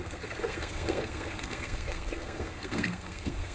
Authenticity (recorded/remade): remade